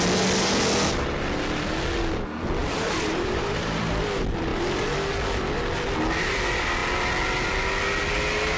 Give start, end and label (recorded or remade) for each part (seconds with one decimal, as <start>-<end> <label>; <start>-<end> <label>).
0.0-2.6 recorded; 2.6-4.0 remade; 4.0-8.6 recorded